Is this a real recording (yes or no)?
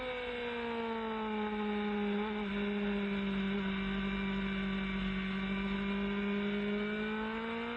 yes